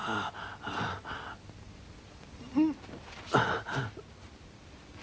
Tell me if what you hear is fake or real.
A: real